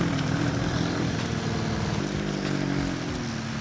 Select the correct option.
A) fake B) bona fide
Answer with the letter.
B